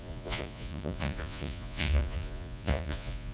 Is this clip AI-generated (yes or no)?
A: yes